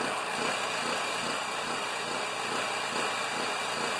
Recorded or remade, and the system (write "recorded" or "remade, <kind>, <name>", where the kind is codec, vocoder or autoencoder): recorded